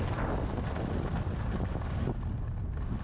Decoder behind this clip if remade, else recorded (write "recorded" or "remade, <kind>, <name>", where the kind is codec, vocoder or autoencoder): recorded